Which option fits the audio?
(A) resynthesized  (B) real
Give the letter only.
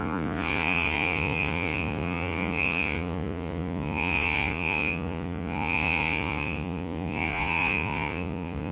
A